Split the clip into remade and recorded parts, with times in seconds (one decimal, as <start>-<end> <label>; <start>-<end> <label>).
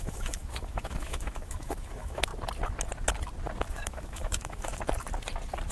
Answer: 0.0-2.3 remade; 2.3-3.7 recorded; 3.7-4.7 remade; 4.7-5.7 recorded